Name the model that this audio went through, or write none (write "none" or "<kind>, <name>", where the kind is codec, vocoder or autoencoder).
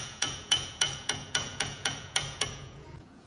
vocoder, Vocos